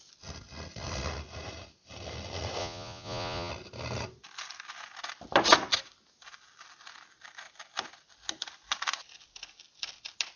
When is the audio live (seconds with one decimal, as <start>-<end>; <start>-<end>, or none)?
0.0-2.6; 3.5-10.4